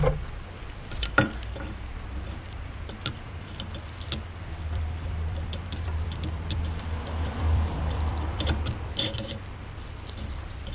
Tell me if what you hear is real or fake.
fake